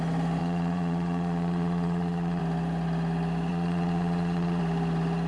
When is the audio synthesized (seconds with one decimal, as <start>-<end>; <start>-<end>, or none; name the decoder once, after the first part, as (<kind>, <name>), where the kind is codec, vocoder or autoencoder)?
0.4-2.4 (vocoder, Vocos); 3.5-4.6